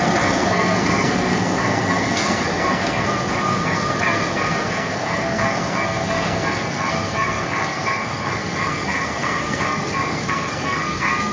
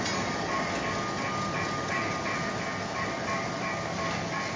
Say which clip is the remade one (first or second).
first